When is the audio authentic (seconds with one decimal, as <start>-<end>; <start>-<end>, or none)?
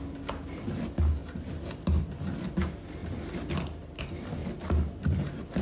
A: 0.0-5.6